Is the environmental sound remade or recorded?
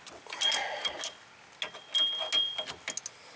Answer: recorded